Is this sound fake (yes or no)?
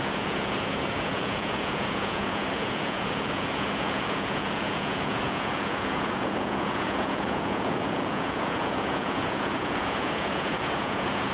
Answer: yes